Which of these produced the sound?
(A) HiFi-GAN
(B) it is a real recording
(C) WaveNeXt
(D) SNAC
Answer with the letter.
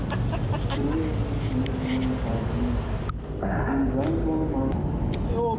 B